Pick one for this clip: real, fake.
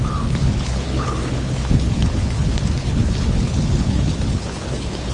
fake